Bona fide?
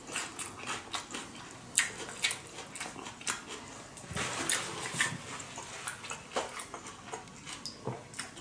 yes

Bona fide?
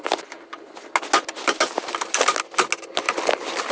yes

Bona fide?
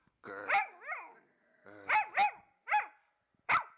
yes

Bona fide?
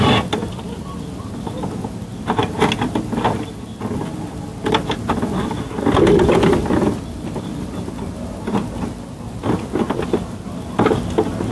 yes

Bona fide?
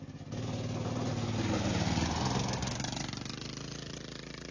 yes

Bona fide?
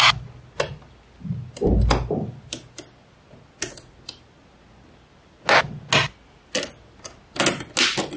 yes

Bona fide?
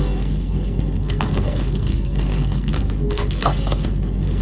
no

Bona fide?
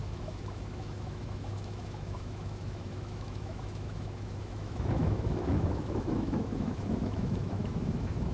no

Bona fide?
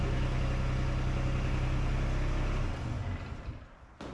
yes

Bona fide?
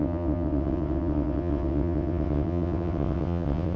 no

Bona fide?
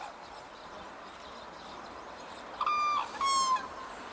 yes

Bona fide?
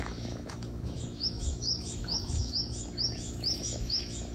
no